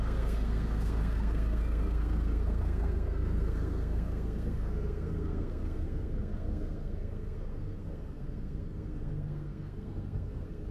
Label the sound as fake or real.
fake